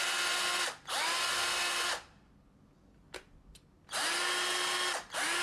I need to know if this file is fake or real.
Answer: real